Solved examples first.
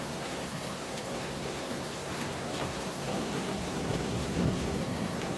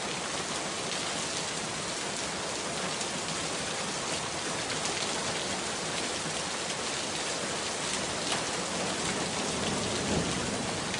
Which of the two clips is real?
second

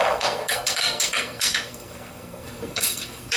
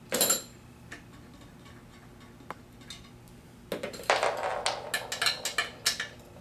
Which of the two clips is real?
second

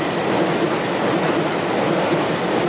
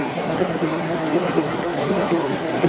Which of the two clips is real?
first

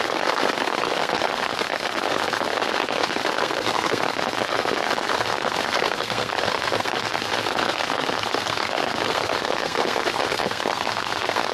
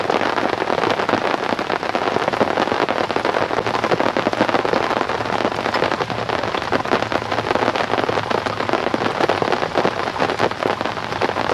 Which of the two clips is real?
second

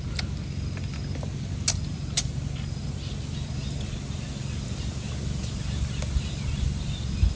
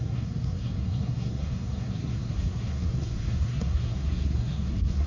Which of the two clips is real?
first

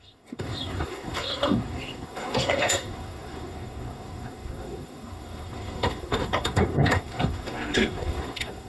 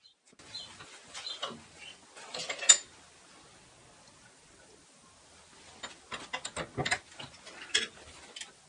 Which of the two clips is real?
second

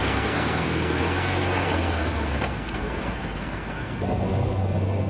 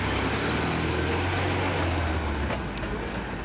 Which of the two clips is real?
second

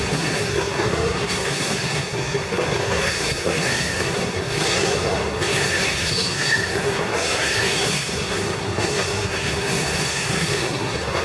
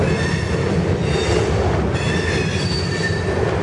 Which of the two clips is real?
second